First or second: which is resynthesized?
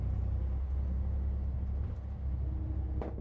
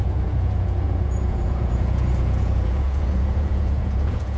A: second